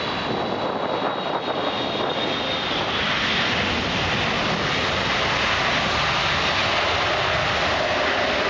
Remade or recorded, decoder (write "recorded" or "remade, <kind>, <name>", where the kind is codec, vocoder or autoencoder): recorded